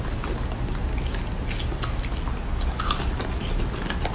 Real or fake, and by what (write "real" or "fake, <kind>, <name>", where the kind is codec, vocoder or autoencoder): real